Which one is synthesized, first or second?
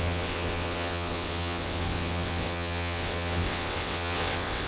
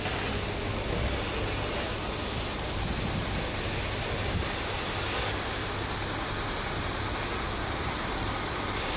first